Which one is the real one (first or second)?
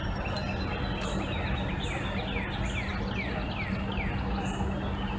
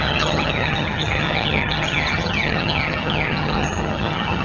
first